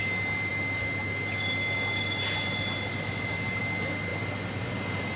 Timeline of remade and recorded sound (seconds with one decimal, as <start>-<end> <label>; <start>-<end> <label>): 0.0-5.2 recorded